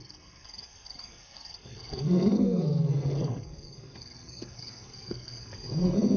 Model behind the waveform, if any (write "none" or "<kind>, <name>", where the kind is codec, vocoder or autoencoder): codec, SNAC